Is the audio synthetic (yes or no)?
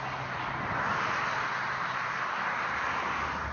no